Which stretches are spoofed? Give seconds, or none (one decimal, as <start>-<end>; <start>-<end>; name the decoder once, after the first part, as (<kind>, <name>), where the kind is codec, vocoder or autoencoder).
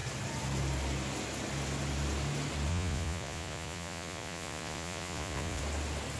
2.7-5.6 (vocoder, Vocos)